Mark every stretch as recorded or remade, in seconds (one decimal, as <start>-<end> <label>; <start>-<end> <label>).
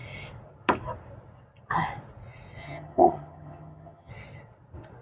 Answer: 0.0-2.6 recorded; 2.6-4.1 remade; 4.1-5.0 recorded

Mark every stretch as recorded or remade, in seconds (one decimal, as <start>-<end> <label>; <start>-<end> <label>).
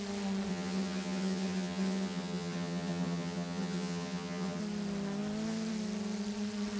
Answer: 0.0-0.5 recorded; 0.5-4.6 remade; 4.6-6.8 recorded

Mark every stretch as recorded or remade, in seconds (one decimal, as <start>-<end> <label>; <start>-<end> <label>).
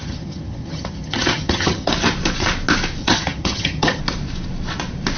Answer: 0.0-1.9 remade; 1.9-3.0 recorded; 3.0-4.0 remade; 4.0-5.2 recorded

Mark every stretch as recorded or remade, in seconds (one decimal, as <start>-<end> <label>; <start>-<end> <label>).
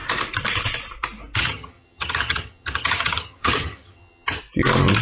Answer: 0.0-1.4 recorded; 1.4-4.4 remade; 4.4-5.0 recorded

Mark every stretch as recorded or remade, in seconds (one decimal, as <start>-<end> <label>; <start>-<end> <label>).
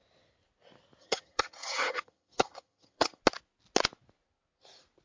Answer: 0.0-1.0 recorded; 1.0-3.2 remade; 3.2-5.0 recorded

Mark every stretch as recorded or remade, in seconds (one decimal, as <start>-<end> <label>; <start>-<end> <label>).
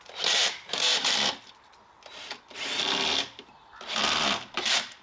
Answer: 0.0-5.0 recorded